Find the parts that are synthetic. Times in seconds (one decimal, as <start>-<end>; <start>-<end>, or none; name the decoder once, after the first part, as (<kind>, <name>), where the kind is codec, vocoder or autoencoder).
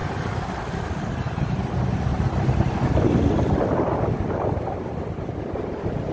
0.0-1.4 (vocoder, BigVGAN v2); 2.1-6.1